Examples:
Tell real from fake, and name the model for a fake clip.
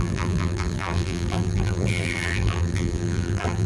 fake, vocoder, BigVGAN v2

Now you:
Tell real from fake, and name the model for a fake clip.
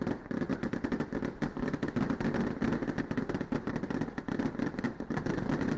real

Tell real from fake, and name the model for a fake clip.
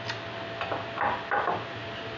real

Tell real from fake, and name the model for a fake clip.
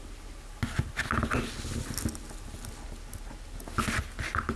real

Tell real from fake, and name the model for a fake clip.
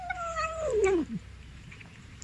fake, vocoder, BigVGAN v2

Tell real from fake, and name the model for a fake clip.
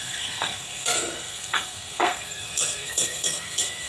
fake, codec, SNAC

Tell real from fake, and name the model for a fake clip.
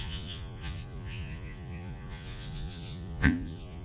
fake, vocoder, Vocos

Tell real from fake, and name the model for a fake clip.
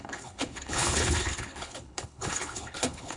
fake, codec, HILCodec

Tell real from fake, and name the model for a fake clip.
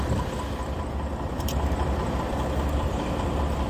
fake, vocoder, BigVGAN v2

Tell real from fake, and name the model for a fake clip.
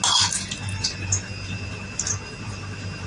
real